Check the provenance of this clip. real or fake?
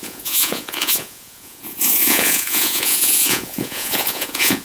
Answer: fake